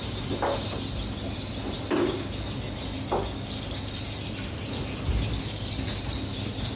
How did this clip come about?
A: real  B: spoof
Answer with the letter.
A